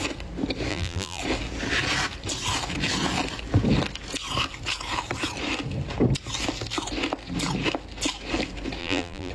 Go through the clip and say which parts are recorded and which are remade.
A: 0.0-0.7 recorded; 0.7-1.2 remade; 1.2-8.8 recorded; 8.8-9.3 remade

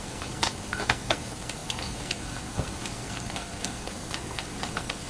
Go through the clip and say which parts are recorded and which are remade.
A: 0.0-5.1 remade

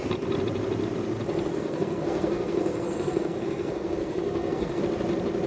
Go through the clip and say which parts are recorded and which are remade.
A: 0.0-1.5 recorded; 1.5-4.8 remade; 4.8-5.5 recorded

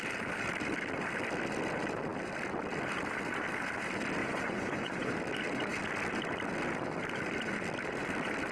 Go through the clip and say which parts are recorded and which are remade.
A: 0.0-4.2 recorded; 4.2-5.1 remade; 5.1-8.5 recorded

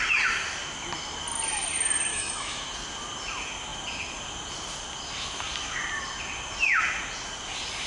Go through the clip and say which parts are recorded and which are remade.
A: 0.0-2.1 recorded; 2.1-2.7 remade; 2.7-7.9 recorded

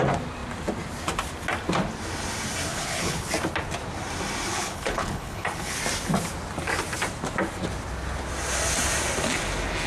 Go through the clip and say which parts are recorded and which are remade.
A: 0.0-2.7 recorded; 2.7-3.3 remade; 3.3-4.5 recorded; 4.5-5.8 remade; 5.8-9.9 recorded